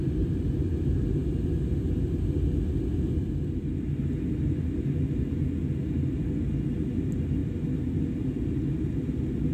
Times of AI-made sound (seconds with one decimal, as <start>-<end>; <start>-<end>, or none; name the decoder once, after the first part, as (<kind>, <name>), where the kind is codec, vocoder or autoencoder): none